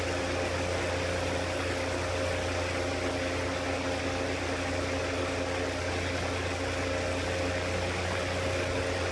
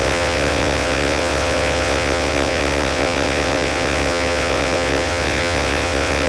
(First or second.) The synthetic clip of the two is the second